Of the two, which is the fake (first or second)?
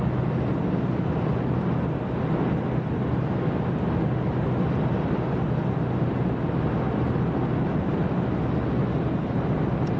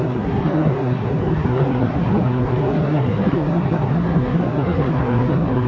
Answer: second